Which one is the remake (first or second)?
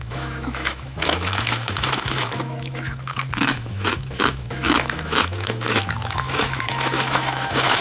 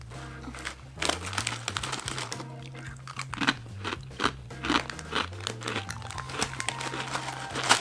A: first